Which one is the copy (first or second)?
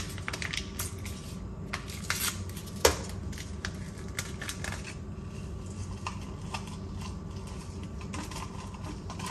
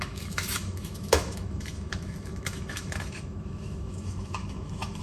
second